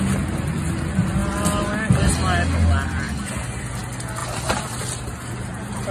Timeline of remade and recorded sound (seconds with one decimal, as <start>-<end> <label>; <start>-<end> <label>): 0.0-4.2 recorded; 4.2-4.8 remade; 4.8-5.9 recorded